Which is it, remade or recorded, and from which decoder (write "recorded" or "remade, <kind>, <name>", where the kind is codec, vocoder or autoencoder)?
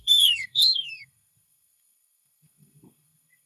remade, codec, SNAC